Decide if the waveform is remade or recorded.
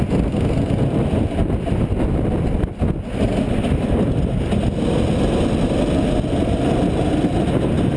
recorded